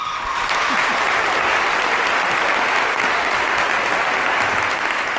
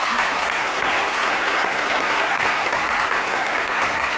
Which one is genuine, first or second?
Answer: first